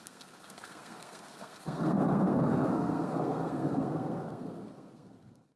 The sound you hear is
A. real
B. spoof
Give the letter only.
B